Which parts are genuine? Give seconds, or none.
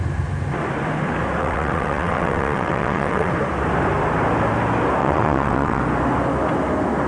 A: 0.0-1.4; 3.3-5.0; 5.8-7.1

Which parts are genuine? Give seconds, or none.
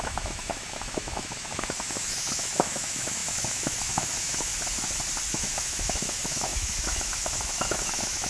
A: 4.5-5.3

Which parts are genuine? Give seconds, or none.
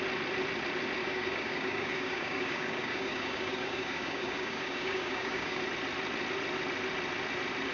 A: 0.0-1.0; 5.6-7.7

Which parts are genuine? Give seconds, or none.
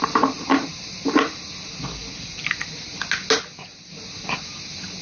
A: 1.2-5.0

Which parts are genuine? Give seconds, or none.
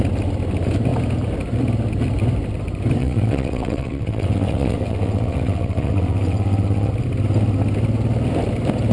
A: 0.0-3.0; 6.9-8.9